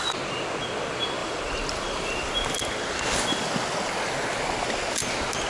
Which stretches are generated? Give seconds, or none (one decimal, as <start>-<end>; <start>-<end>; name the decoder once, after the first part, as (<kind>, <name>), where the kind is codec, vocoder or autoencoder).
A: 1.2-2.3 (vocoder, BigVGAN v2)